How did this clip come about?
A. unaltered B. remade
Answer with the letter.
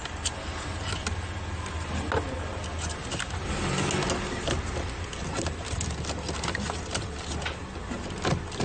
A